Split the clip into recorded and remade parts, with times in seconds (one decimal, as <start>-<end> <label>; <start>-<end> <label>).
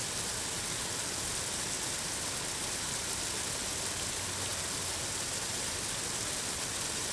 0.0-7.1 recorded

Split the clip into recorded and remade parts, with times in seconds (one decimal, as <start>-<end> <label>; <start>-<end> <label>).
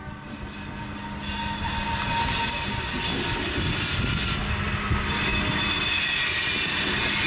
0.0-7.3 recorded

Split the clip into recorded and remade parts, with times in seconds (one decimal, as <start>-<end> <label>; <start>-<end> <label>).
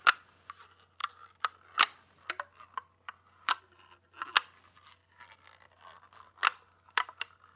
0.0-7.6 recorded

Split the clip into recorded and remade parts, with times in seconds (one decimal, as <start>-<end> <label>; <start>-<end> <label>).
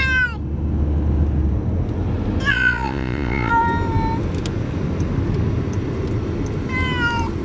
0.0-2.5 recorded; 2.5-3.5 remade; 3.5-7.4 recorded